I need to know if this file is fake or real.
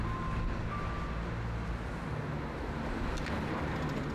real